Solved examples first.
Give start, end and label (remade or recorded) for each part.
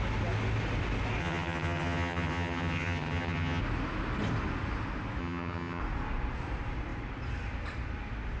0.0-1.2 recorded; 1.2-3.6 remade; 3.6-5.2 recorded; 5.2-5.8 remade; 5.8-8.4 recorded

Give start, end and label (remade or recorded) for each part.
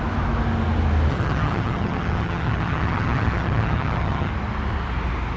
0.0-1.1 recorded; 1.1-4.3 remade; 4.3-5.4 recorded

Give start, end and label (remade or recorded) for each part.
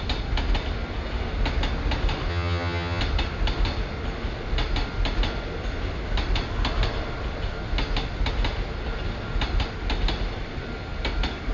0.0-2.3 recorded; 2.3-3.0 remade; 3.0-11.5 recorded